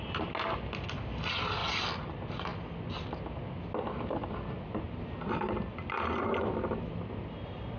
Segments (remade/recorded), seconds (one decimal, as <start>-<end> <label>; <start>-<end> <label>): 0.0-7.8 recorded